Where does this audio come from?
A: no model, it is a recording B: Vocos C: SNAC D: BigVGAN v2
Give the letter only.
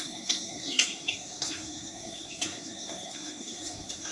C